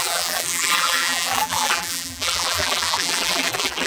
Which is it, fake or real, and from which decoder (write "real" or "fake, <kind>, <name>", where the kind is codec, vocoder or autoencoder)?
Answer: fake, vocoder, BigVGAN v2